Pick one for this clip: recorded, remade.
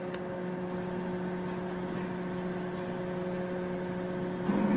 recorded